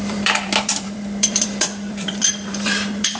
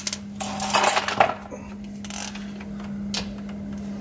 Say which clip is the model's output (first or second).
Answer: first